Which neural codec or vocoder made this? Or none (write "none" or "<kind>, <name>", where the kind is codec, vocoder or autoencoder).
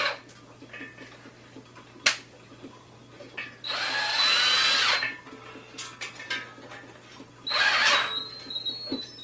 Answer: none